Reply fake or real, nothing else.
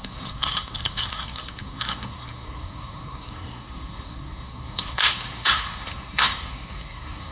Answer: fake